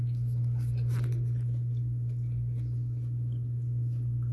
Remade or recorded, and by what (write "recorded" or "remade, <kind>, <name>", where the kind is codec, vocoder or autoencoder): recorded